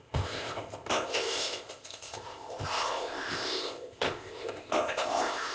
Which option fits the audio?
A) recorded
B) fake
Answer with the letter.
B